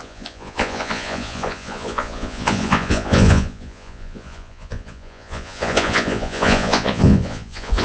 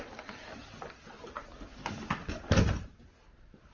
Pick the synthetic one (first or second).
first